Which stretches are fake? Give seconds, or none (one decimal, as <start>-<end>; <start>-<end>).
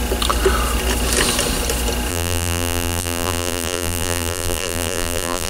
2.1-5.5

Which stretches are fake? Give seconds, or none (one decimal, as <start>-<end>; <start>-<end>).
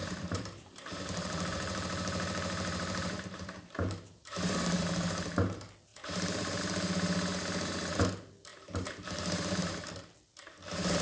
0.0-4.8; 5.9-6.6; 8.5-9.6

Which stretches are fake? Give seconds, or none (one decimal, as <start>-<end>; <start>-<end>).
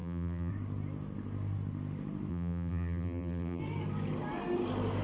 0.0-0.5; 2.3-3.6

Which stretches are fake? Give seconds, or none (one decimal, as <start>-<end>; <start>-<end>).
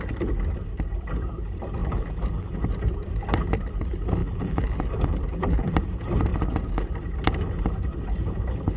1.8-2.6; 4.2-5.7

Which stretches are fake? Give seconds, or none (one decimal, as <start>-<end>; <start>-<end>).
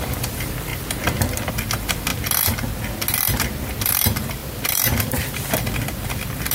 0.0-0.7; 1.5-2.1; 3.6-6.5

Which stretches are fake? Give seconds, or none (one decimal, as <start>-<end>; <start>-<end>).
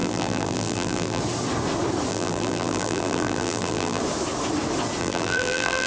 0.0-1.2; 2.1-4.0; 5.0-5.9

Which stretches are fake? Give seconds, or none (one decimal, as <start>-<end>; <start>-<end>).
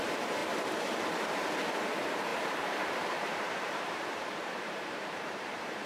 2.3-5.9